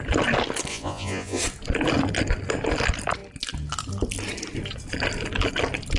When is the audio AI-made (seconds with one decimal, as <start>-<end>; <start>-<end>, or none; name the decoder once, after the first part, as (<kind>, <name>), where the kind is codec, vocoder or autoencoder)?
0.7-1.4 (vocoder, Vocos)